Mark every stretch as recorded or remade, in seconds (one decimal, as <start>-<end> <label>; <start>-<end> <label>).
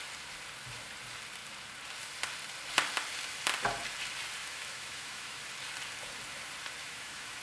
0.0-4.4 recorded; 4.4-5.4 remade; 5.4-6.8 recorded; 6.8-7.4 remade